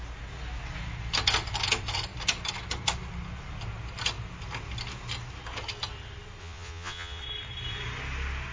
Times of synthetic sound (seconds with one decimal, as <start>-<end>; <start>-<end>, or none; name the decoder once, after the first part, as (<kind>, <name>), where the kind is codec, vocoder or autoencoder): 6.4-7.2 (vocoder, Vocos)